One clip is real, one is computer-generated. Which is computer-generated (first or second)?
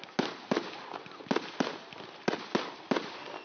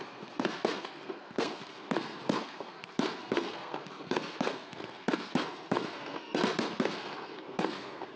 second